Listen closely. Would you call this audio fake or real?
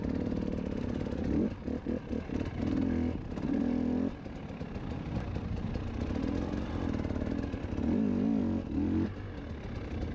real